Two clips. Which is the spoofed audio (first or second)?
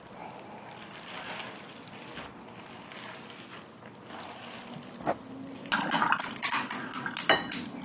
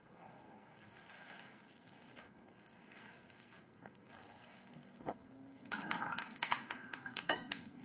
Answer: second